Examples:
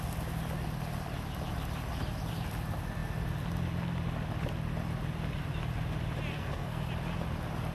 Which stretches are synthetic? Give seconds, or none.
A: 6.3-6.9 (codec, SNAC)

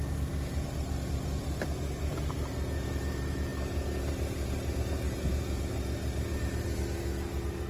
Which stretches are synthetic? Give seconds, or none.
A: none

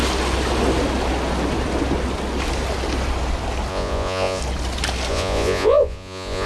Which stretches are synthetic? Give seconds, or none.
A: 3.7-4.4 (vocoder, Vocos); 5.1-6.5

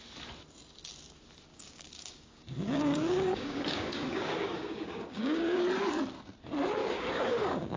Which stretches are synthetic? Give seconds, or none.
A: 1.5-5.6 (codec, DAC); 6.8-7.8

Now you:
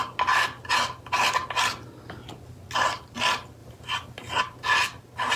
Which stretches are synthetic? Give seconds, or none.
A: none